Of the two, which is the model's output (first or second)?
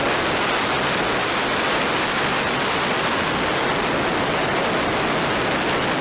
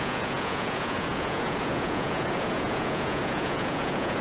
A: second